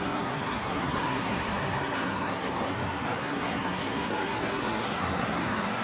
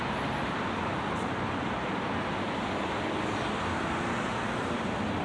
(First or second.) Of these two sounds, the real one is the second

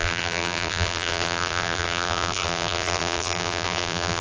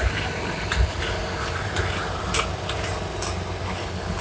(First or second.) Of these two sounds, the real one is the second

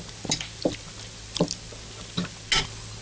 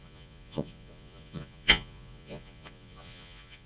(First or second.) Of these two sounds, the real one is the first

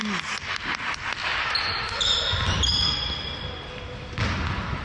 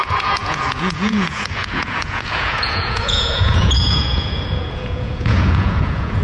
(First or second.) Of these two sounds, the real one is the first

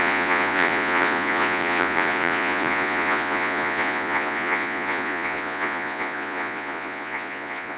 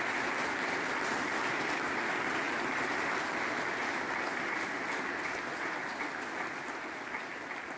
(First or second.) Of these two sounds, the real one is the second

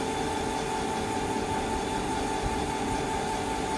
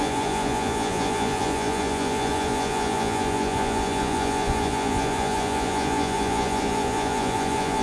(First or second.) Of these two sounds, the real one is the first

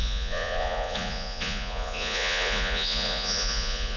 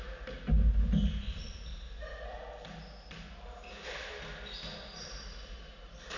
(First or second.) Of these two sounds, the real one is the second